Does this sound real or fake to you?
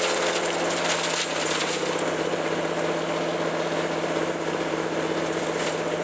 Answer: real